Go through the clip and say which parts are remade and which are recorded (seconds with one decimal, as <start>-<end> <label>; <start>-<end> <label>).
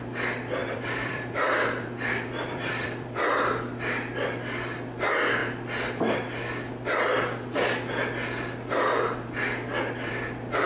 0.0-0.6 recorded; 0.6-3.2 remade; 3.2-10.7 recorded